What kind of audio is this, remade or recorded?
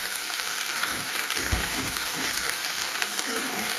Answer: remade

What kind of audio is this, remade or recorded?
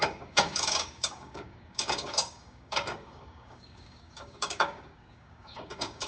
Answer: remade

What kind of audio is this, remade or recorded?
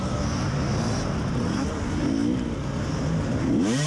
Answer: recorded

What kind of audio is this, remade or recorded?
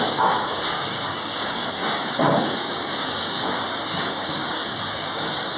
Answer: remade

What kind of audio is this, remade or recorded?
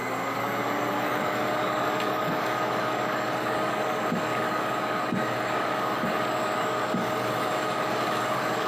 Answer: remade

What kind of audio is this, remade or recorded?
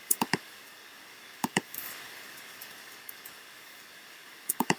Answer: remade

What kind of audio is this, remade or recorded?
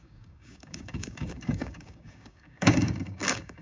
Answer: remade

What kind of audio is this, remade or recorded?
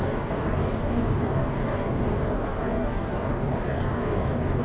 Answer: remade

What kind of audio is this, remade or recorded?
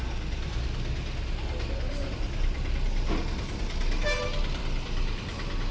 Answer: recorded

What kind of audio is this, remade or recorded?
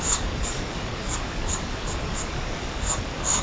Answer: remade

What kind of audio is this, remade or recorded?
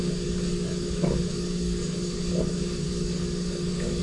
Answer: remade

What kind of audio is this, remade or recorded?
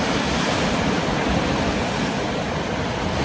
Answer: recorded